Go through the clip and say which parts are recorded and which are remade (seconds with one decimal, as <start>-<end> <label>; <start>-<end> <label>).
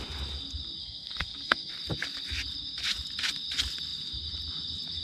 0.0-0.8 recorded; 0.8-1.7 remade; 1.7-5.0 recorded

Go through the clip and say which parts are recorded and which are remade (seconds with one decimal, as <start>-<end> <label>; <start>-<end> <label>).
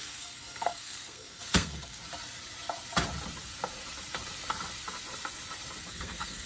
0.0-2.0 remade; 2.0-5.9 recorded; 5.9-6.5 remade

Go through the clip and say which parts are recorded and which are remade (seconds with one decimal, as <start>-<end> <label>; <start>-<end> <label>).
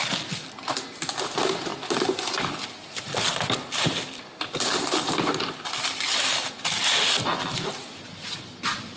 0.0-9.0 recorded